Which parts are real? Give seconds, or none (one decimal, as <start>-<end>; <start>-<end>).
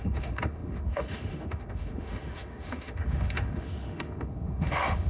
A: none